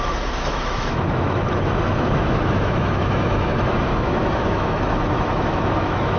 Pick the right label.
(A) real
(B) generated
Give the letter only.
B